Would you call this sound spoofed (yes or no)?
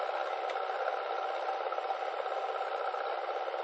no